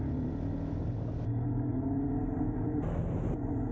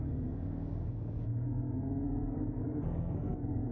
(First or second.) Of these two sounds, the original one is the first